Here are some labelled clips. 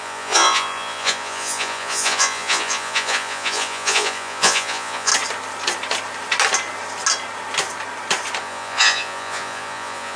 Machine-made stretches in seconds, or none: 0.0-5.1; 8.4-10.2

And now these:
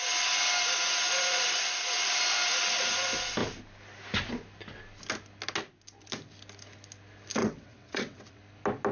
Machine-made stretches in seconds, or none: 7.4-8.4

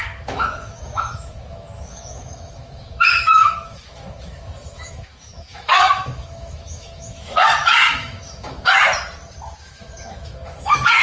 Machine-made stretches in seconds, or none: 0.0-8.9; 9.6-11.0

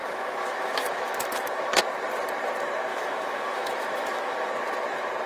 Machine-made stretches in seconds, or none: 0.0-1.8; 2.9-4.5